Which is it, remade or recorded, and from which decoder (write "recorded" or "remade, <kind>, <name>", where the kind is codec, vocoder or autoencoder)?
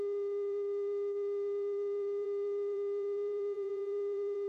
remade, vocoder, BigVGAN v2